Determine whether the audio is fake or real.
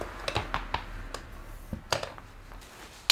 real